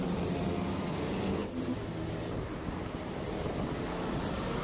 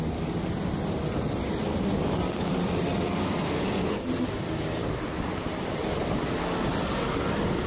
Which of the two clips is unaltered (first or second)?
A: first